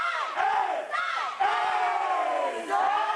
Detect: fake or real fake